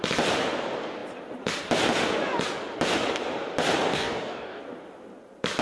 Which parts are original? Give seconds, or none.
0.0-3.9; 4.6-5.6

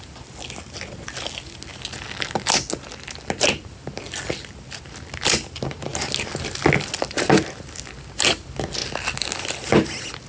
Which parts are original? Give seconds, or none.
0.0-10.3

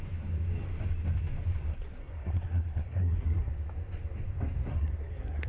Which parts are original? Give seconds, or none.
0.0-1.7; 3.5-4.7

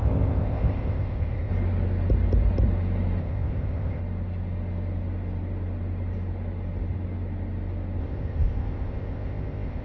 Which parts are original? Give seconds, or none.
1.5-3.2; 4.0-8.0

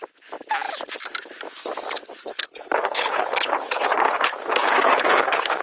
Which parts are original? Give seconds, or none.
0.0-2.2

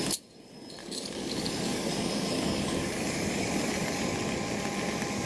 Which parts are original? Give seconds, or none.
0.0-0.8; 4.0-5.3